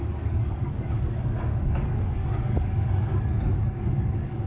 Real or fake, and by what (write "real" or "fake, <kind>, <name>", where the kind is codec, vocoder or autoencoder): fake, codec, DAC